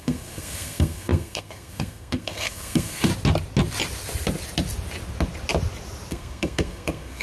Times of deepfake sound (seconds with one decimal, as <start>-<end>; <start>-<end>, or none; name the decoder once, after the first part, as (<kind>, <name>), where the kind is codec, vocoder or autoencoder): 0.0-3.1 (codec, SNAC); 6.1-7.2